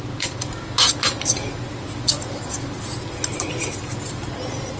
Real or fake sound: real